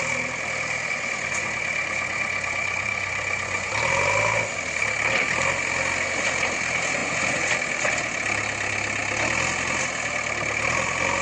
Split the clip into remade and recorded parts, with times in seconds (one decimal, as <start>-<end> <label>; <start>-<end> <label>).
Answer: 0.0-0.9 recorded; 0.9-3.7 remade; 3.7-7.0 recorded; 7.0-7.5 remade; 7.5-11.2 recorded